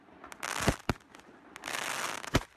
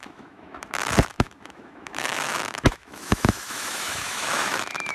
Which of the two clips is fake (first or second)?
second